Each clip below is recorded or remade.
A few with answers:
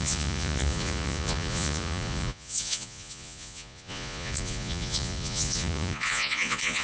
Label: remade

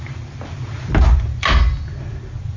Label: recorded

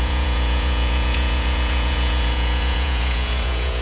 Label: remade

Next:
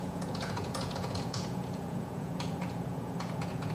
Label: remade